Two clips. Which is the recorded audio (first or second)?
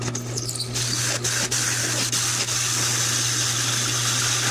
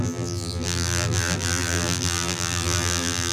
first